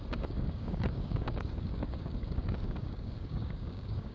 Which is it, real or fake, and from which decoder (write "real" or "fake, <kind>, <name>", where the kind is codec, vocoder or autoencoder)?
fake, codec, DAC